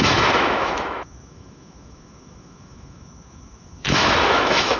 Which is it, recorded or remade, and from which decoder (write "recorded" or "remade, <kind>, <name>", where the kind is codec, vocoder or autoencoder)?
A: remade, autoencoder, DAC-VAE